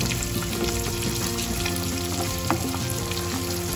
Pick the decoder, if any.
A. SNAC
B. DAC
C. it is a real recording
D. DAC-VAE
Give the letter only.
C